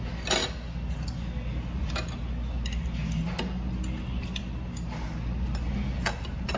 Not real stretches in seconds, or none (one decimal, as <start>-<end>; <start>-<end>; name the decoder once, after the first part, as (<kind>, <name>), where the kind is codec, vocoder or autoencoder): none